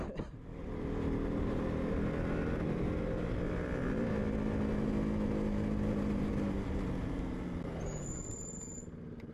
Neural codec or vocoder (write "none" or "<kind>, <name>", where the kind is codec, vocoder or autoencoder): none